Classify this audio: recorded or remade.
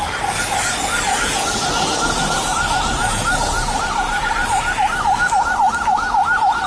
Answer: recorded